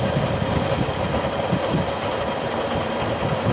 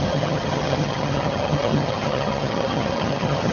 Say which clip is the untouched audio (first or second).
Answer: first